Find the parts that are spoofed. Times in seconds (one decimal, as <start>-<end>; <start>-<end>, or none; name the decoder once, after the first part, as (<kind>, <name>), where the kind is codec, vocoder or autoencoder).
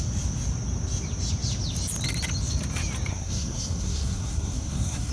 3.1-5.1 (codec, SNAC)